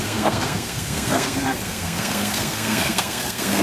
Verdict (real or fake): fake